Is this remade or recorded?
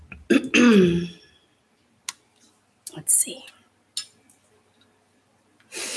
recorded